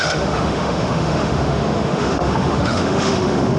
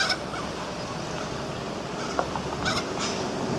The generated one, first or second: first